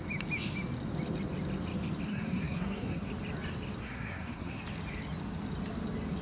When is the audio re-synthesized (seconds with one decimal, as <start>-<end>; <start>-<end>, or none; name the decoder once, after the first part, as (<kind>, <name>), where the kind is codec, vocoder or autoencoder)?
2.1-3.1 (codec, SNAC); 3.8-4.6